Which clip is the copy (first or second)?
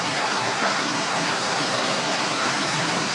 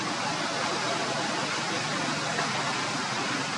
first